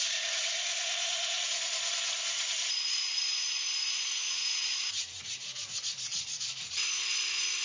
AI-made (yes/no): yes